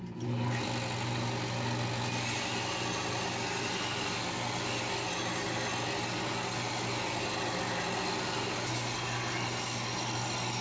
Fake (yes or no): no